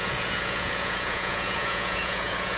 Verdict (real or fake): fake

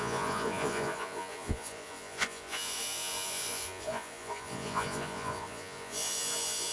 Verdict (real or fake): fake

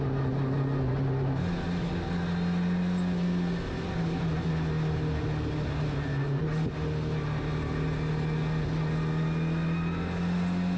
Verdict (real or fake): real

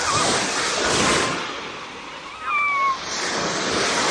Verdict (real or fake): real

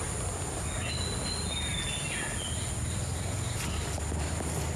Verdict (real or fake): real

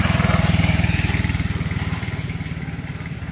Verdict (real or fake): real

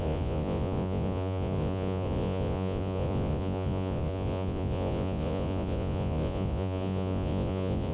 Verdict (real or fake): fake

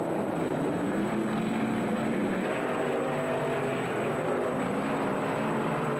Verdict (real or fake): fake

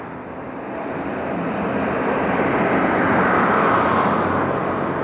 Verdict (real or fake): real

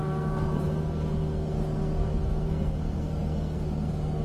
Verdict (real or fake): fake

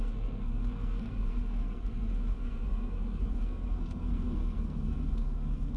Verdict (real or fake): fake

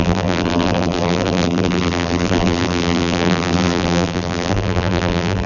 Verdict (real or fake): fake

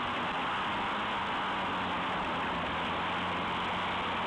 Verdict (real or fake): real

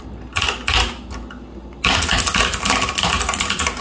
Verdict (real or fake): real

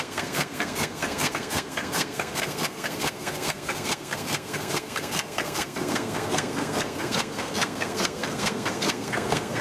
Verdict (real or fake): fake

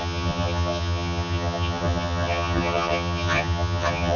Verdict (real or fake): fake